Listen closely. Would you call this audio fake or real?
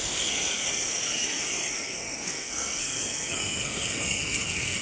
fake